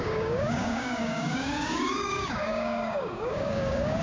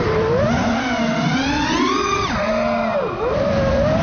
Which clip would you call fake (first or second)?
first